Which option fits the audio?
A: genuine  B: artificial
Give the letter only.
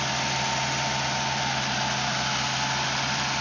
A